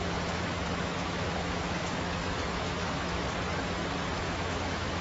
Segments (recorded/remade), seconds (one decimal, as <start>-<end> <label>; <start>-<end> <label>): 0.0-3.2 remade; 3.2-4.2 recorded; 4.2-5.0 remade